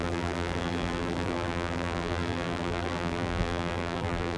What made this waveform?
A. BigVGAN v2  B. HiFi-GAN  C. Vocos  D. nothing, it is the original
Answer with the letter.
A